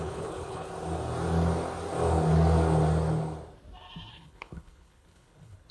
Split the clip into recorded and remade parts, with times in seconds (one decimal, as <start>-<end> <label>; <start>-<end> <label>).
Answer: 0.0-0.7 remade; 0.7-4.1 recorded; 4.1-5.7 remade